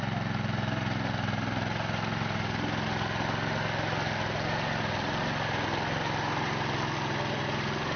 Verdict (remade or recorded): recorded